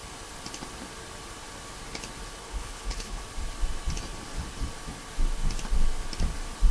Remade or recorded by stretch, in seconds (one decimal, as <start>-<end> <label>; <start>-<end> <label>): 0.0-2.4 recorded; 2.4-3.2 remade; 3.2-6.7 recorded